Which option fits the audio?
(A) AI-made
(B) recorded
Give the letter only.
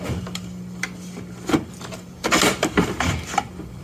B